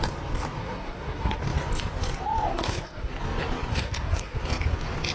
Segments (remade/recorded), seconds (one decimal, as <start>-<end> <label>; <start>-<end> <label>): 0.0-0.6 recorded; 0.6-1.4 remade; 1.4-2.5 recorded; 2.5-3.1 remade; 3.1-3.7 recorded; 3.7-4.4 remade; 4.4-5.1 recorded